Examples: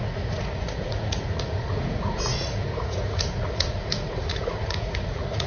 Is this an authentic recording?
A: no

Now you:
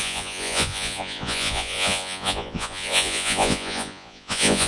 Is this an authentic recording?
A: no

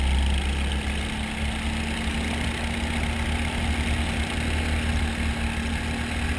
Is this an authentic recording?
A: yes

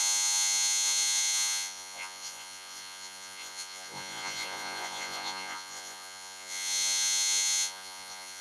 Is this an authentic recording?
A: no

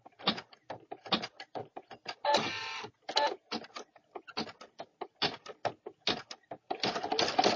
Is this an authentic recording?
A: yes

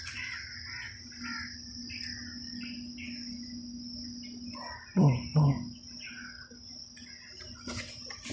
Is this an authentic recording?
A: yes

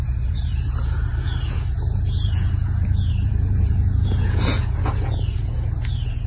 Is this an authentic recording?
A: no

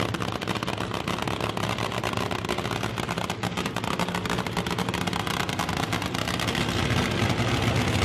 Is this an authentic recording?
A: yes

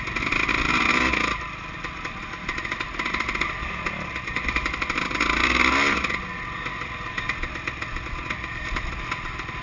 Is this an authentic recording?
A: yes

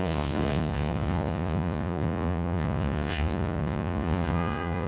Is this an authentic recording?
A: no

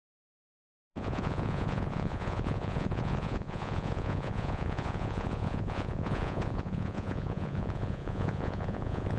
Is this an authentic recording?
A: no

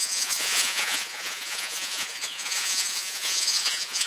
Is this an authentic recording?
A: no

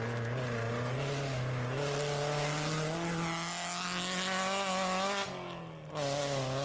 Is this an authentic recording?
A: yes